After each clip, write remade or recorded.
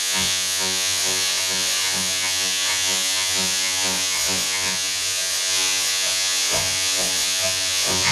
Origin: remade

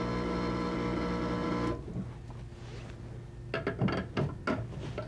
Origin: recorded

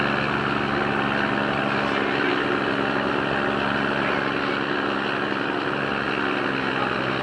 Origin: recorded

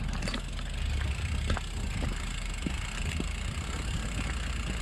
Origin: recorded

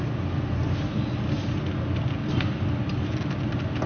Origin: recorded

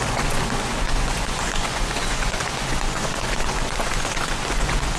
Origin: remade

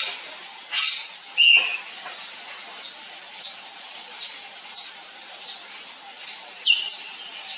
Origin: recorded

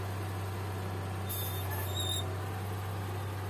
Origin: recorded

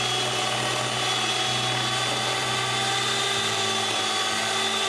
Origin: recorded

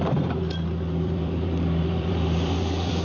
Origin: remade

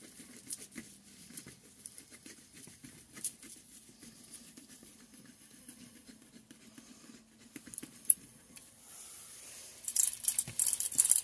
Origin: remade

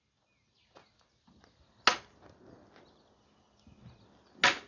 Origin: recorded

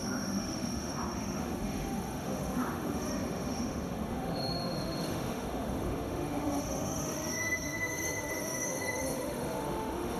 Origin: remade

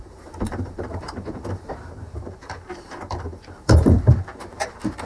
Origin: remade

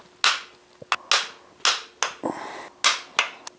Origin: recorded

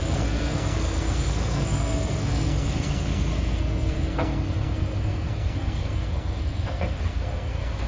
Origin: remade